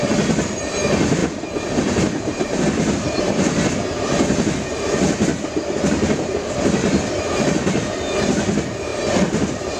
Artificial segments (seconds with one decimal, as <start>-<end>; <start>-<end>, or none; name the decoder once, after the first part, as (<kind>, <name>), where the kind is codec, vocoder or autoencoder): 1.2-3.2 (vocoder, BigVGAN v2)